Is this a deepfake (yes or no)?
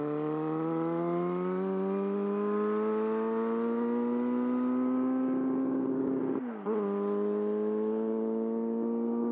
no